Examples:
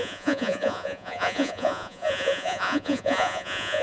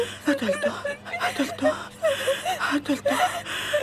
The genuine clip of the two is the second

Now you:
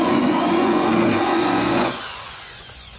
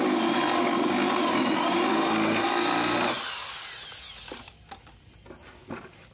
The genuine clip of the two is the second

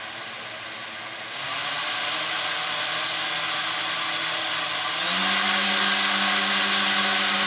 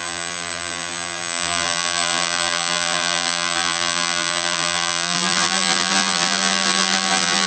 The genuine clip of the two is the first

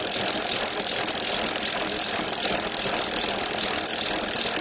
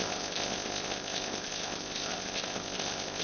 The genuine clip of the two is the first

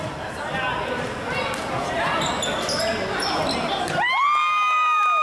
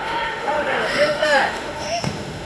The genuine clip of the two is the first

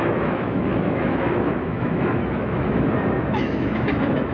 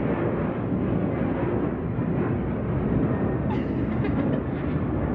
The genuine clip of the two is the second